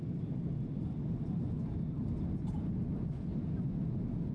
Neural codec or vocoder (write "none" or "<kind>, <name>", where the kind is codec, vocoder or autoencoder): none